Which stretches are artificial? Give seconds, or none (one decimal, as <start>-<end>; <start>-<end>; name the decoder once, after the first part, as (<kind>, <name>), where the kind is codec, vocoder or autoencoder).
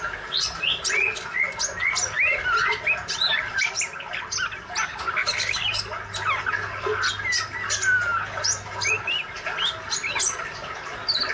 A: 5.2-5.8 (vocoder, BigVGAN v2); 10.6-11.3